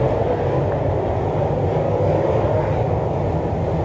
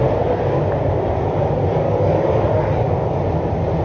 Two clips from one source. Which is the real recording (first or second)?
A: first